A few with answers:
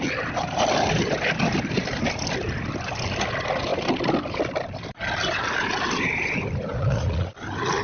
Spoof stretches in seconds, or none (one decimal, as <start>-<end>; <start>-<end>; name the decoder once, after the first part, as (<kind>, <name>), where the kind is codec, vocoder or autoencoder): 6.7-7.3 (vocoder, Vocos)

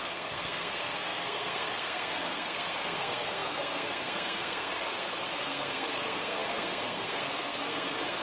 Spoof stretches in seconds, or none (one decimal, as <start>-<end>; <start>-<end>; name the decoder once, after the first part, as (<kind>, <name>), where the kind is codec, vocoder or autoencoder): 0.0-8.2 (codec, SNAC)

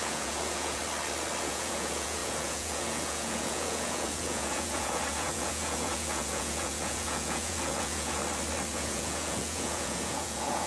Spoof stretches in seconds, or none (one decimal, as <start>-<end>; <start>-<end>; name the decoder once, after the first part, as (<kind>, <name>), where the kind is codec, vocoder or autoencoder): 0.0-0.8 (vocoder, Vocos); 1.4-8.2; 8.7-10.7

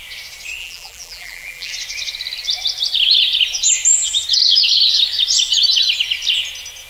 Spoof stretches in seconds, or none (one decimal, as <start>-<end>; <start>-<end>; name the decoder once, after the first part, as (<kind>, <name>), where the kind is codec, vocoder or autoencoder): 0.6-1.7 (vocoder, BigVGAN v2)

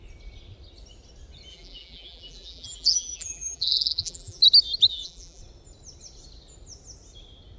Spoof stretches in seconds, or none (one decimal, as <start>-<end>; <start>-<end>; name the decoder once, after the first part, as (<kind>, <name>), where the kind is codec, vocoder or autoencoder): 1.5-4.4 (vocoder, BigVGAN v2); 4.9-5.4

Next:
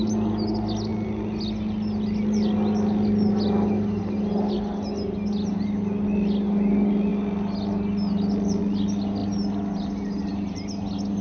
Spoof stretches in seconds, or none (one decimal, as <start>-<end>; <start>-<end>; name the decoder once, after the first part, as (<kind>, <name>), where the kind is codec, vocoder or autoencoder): none